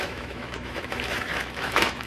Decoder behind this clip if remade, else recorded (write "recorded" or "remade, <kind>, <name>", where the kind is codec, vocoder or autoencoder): remade, autoencoder, DAC-VAE